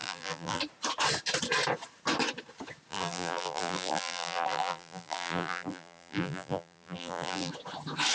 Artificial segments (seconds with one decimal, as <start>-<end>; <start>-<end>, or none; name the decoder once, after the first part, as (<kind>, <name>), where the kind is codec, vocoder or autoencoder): 0.0-0.6 (vocoder, BigVGAN v2); 2.9-7.5